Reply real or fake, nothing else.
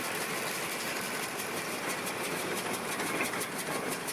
real